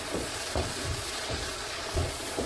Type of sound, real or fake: fake